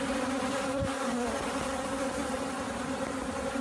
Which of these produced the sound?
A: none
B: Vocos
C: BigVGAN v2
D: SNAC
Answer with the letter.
A